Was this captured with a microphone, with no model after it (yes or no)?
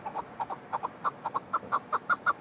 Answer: yes